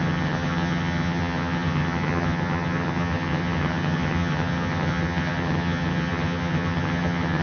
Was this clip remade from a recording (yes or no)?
yes